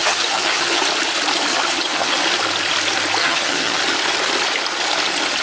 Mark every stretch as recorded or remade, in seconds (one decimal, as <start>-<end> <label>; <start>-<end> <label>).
0.0-0.8 remade; 0.8-1.5 recorded; 1.5-2.2 remade; 2.2-3.2 recorded; 3.2-3.8 remade; 3.8-5.4 recorded